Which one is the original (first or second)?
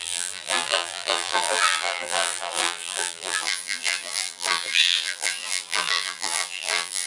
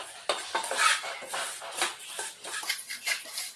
second